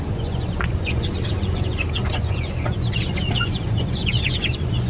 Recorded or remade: remade